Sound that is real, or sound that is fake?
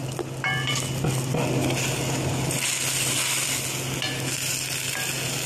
real